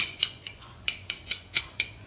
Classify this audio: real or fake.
fake